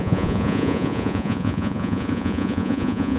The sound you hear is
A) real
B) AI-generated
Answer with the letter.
B